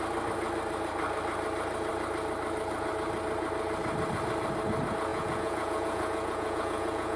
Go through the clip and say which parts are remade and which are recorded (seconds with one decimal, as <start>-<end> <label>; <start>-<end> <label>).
0.0-5.1 recorded; 5.1-7.2 remade